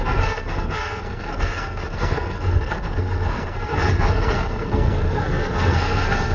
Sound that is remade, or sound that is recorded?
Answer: remade